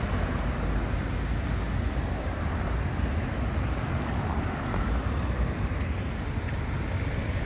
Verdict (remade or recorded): recorded